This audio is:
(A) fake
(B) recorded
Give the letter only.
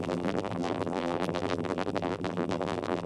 A